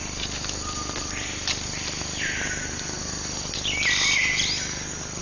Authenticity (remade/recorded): recorded